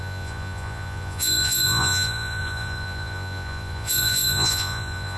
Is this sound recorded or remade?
remade